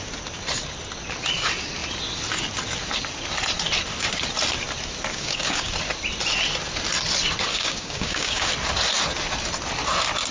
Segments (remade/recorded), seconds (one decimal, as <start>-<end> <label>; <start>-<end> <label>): 0.0-5.1 recorded; 5.1-5.7 remade; 5.7-7.5 recorded; 7.5-8.5 remade; 8.5-10.3 recorded